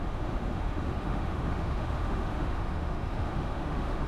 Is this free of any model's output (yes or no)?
no